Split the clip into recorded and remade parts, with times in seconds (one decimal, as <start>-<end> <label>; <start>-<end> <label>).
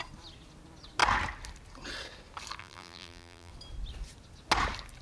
0.0-2.6 recorded; 2.6-3.5 remade; 3.5-5.0 recorded